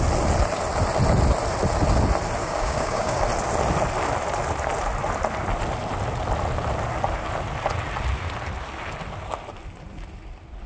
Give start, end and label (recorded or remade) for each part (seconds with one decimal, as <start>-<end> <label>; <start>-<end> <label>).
0.0-2.4 recorded; 2.4-3.2 remade; 3.2-10.7 recorded